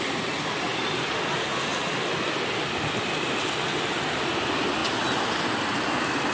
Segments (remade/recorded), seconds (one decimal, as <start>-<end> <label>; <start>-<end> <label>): 0.0-6.3 recorded